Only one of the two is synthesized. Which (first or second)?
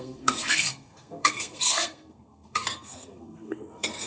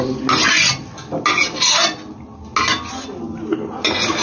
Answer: first